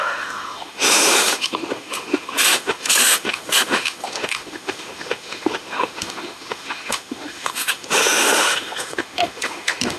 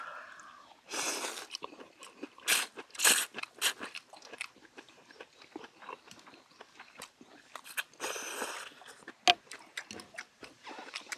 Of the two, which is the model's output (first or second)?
first